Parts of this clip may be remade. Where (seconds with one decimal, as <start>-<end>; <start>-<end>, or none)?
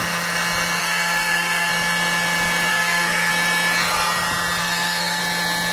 0.8-1.7; 2.7-3.3; 4.6-5.2